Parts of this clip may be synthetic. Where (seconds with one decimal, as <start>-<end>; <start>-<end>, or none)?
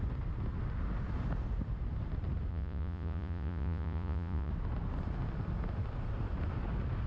2.5-4.5